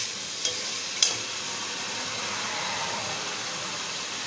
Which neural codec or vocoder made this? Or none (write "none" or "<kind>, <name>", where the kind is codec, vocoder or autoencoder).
vocoder, BigVGAN v2